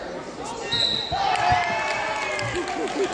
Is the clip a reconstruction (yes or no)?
no